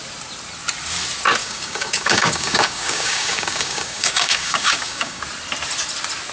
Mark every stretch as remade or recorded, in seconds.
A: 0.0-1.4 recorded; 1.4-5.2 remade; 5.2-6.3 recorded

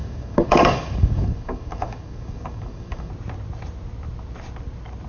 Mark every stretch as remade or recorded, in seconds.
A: 0.0-3.1 remade; 3.1-5.1 recorded